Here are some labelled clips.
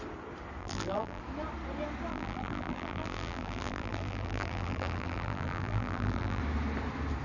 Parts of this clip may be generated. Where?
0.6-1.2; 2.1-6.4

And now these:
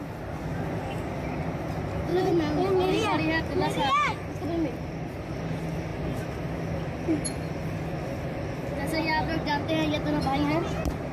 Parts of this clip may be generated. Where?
none

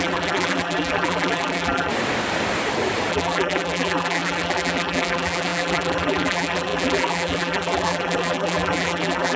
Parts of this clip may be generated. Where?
0.0-1.9; 3.1-9.4

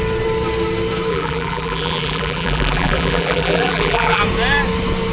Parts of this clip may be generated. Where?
1.1-4.2